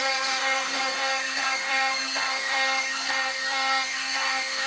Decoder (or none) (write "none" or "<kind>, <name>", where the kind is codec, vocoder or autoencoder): codec, SNAC